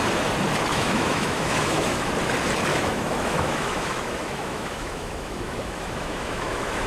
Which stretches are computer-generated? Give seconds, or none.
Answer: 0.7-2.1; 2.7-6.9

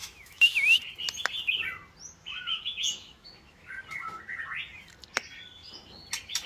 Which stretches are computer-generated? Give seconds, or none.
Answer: 0.0-0.8; 2.2-3.7

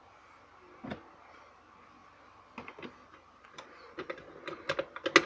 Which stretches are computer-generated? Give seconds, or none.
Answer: none

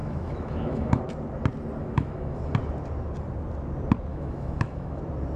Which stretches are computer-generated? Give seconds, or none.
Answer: 0.0-1.0; 1.8-2.5; 4.1-5.0

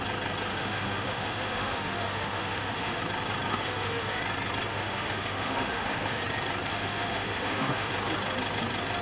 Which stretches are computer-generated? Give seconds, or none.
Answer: 0.5-3.0; 3.5-4.2; 4.7-6.2; 6.7-7.9